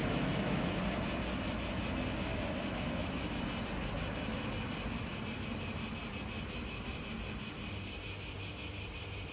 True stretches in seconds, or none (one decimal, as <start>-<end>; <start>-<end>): 0.8-2.3; 3.4-9.3